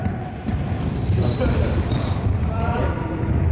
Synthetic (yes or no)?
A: yes